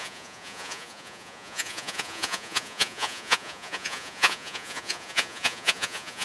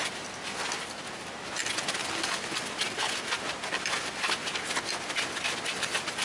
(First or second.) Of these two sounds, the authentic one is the second